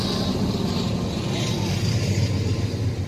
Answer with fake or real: real